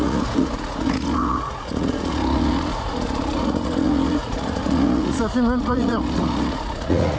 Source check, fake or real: fake